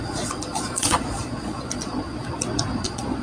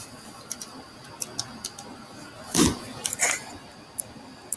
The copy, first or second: first